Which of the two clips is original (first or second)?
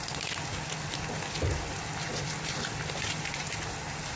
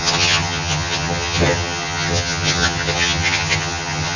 first